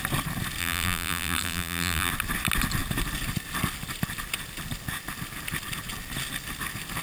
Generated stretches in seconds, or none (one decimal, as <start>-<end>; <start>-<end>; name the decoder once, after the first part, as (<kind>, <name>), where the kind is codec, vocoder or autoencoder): 0.6-2.1 (vocoder, BigVGAN v2)